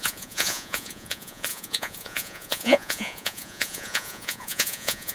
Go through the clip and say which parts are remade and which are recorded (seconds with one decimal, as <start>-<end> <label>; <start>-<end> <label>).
0.0-5.1 remade